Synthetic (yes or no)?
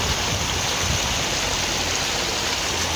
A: no